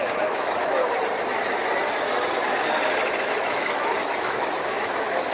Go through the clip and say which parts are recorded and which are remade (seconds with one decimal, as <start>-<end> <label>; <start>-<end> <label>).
0.0-0.8 remade; 0.8-3.2 recorded; 3.2-5.3 remade